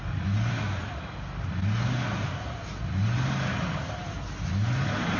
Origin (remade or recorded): recorded